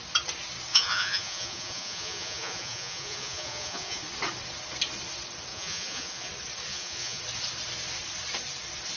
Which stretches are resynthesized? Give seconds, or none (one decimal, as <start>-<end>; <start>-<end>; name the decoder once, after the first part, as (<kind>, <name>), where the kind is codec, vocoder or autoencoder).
0.7-4.0 (vocoder, Vocos); 5.5-6.3; 6.7-7.2